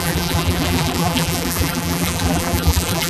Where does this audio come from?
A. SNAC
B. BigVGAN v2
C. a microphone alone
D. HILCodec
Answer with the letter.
B